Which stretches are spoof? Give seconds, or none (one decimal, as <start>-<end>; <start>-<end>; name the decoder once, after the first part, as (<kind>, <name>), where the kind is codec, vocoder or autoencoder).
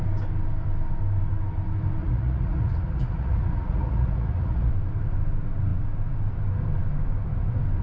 2.0-4.7 (vocoder, Vocos)